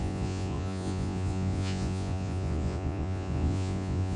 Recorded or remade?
remade